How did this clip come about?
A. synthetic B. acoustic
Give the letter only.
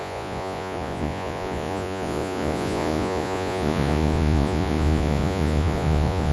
A